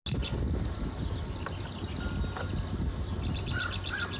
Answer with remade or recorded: recorded